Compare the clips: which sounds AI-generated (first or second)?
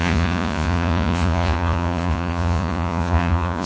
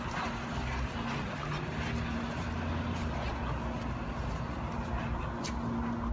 first